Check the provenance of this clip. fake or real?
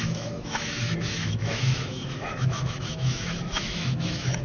fake